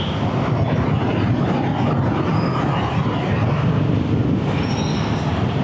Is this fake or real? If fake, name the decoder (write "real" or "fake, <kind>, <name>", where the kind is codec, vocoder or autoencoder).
real